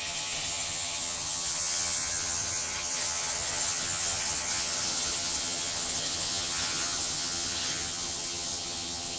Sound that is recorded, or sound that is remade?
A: remade